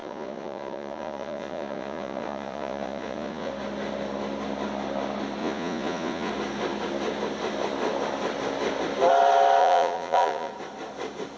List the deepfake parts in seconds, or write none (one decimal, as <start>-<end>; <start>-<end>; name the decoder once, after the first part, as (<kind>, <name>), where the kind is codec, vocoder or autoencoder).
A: 0.0-3.5 (vocoder, Vocos); 5.4-6.3; 9.6-10.5